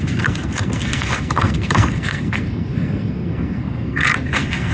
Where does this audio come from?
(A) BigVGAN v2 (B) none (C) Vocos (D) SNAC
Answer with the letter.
D